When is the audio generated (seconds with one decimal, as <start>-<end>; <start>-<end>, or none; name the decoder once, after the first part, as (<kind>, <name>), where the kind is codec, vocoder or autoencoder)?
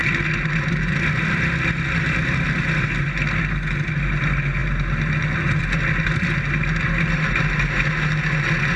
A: none